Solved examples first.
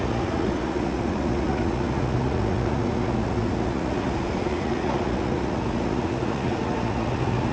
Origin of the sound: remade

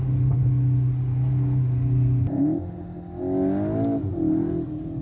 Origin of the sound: recorded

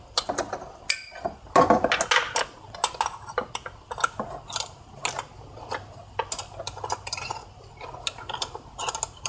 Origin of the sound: recorded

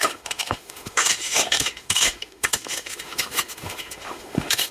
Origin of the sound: remade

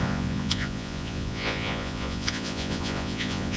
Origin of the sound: remade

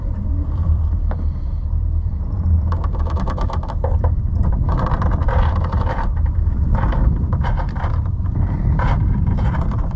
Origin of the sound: remade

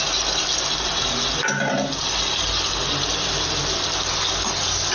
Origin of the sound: recorded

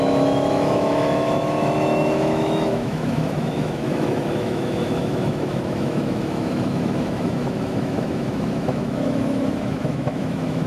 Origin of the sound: remade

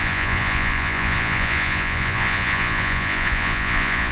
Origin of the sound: remade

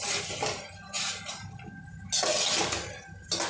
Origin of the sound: recorded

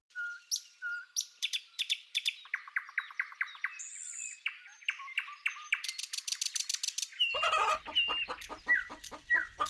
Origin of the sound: recorded